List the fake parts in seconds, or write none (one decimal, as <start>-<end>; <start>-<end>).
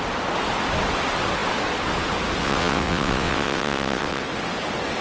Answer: 2.4-4.2